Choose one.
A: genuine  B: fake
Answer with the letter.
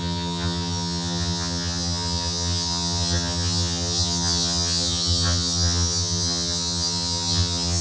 B